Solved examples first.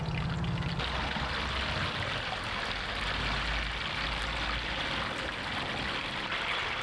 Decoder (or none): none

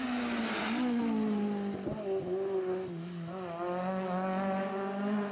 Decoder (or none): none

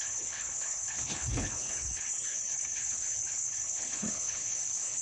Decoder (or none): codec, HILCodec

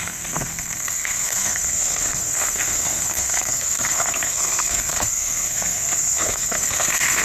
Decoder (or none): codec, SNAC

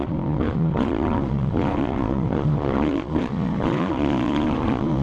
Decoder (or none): vocoder, Vocos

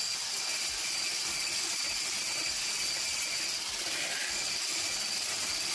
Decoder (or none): none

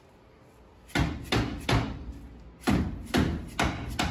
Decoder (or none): none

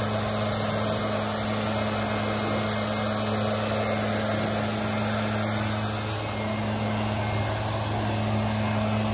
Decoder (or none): none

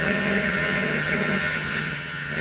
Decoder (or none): vocoder, HiFi-GAN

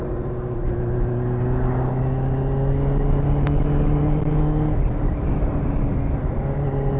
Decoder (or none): none